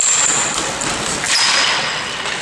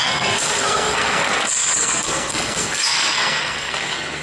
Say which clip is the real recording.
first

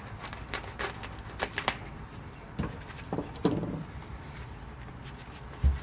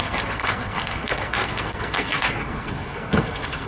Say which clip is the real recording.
first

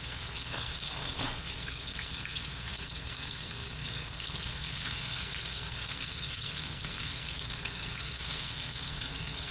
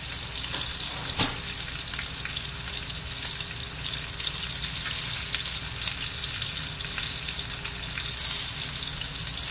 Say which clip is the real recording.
second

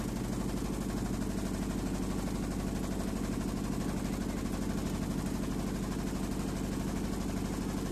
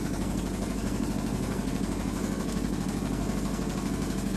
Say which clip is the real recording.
first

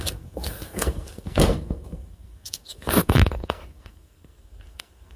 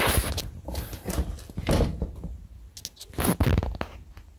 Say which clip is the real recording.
second